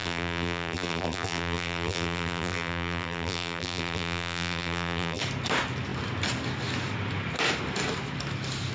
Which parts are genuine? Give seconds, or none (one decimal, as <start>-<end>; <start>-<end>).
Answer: 5.2-8.7